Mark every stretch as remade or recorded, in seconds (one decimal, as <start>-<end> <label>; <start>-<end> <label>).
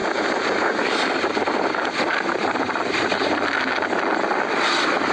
0.0-3.1 remade; 3.1-5.1 recorded